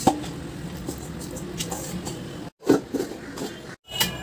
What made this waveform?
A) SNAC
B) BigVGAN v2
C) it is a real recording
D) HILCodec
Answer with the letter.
C